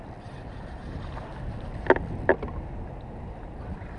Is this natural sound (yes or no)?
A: yes